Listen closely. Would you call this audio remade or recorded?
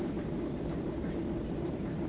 remade